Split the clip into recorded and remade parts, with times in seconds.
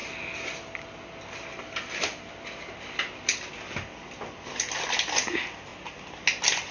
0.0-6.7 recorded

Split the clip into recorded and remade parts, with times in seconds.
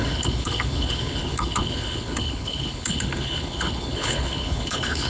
0.0-5.1 remade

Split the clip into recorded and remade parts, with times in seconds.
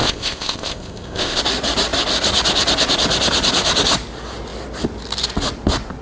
0.0-1.4 remade; 1.4-6.0 recorded